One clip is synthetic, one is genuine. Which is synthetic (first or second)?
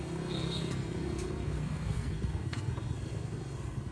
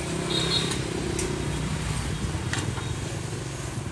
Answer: first